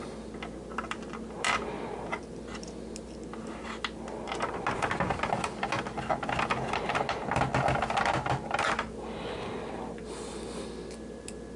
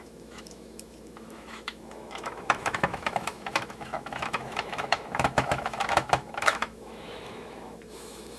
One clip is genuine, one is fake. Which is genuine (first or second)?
first